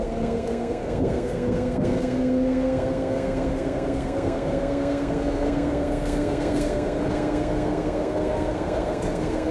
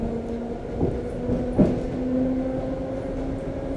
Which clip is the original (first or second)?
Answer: second